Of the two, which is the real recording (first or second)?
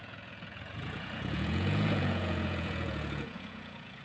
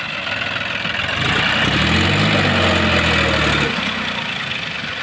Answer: second